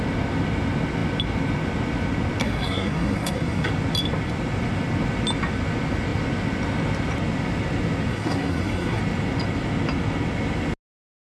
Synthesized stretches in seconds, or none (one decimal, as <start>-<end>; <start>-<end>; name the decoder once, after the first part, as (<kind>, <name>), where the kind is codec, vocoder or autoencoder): 2.4-3.7 (codec, SNAC); 8.1-9.0